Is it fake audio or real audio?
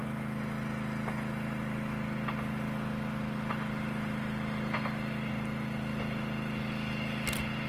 real